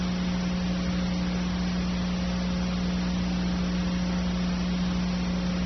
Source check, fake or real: real